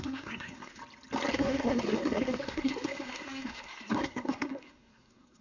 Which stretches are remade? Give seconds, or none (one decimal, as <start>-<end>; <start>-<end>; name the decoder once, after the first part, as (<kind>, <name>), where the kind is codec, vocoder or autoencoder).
0.0-0.8 (codec, SNAC); 1.3-5.4